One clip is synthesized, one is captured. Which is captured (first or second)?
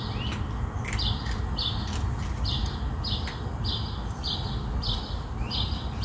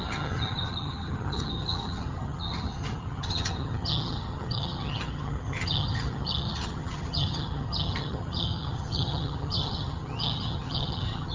first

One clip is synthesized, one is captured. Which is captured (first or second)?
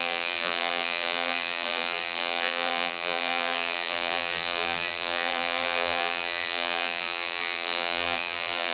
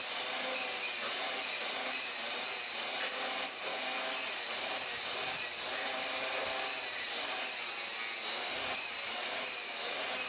second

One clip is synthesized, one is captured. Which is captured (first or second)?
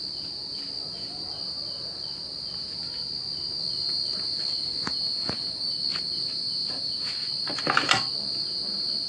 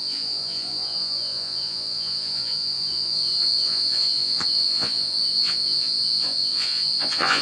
first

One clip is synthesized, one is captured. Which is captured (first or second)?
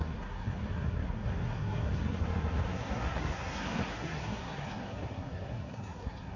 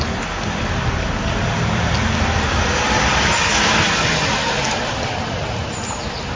second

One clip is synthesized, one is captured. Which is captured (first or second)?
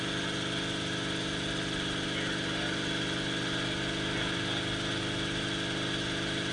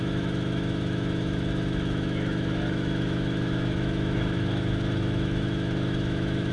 first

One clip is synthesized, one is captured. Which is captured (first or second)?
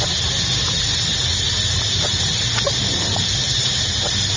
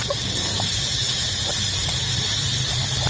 first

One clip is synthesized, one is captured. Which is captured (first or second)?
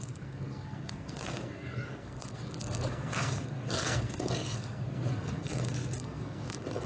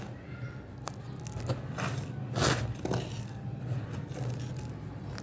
second